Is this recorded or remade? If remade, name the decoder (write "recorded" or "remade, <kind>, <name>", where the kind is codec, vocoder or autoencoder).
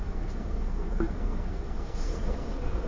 remade, codec, SNAC